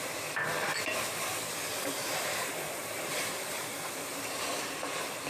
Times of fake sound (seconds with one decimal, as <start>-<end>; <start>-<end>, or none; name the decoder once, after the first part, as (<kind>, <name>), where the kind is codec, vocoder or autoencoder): 2.0-4.3 (vocoder, BigVGAN v2)